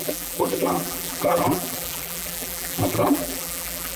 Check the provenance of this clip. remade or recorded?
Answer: remade